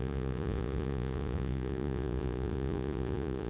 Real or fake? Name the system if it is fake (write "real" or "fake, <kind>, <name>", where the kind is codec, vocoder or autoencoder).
fake, vocoder, Vocos